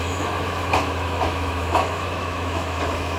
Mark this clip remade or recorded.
remade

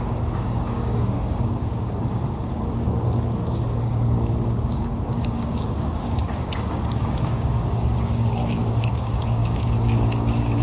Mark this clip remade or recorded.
remade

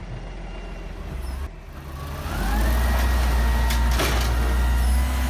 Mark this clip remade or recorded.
recorded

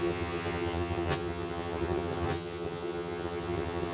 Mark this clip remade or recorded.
remade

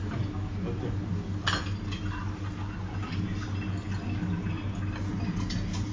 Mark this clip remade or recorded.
recorded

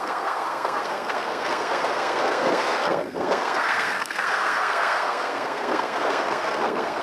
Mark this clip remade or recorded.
remade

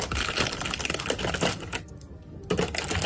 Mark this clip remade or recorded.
recorded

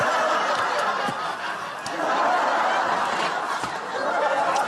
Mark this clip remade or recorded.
recorded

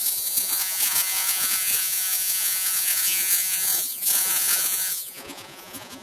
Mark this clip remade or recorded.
remade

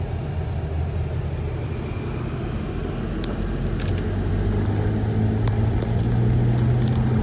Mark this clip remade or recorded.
recorded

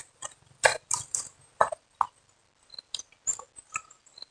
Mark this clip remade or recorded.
recorded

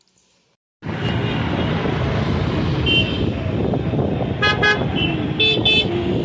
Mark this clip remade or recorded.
recorded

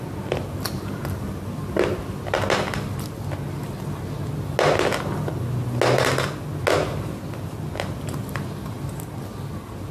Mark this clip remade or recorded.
recorded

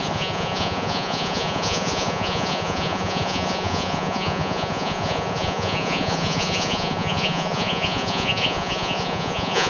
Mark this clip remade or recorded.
remade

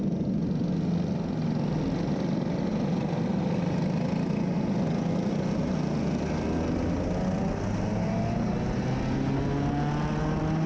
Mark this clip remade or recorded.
recorded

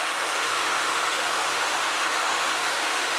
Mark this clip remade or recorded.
remade